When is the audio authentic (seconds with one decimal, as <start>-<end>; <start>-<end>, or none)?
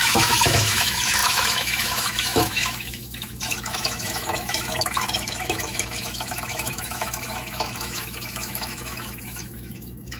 none